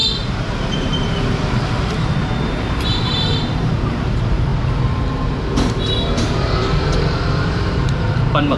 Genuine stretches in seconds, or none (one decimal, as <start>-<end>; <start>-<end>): 0.0-2.7